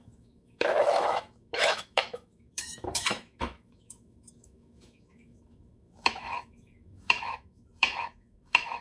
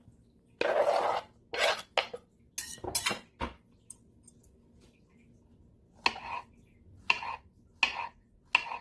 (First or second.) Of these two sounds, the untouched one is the second